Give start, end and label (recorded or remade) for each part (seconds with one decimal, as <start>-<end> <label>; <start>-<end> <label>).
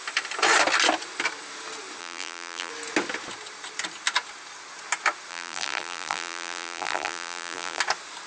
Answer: 0.0-2.0 recorded; 2.0-2.7 remade; 2.7-5.3 recorded; 5.3-7.8 remade; 7.8-8.3 recorded